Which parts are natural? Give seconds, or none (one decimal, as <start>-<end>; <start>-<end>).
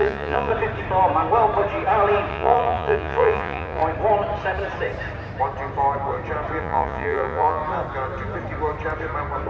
0.5-2.3; 3.8-6.6; 7.6-9.5